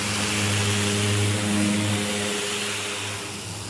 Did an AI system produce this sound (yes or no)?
no